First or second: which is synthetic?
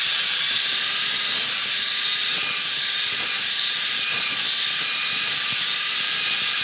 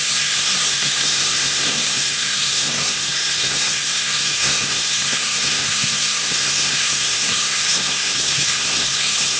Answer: second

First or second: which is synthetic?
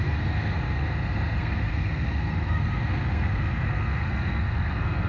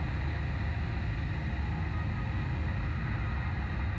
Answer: first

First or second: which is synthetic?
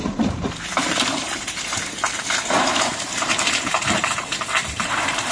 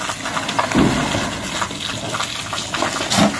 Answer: first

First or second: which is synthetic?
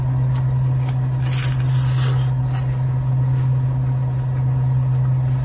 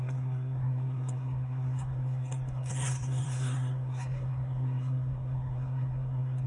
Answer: second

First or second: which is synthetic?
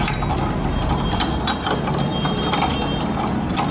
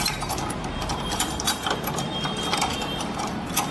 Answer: second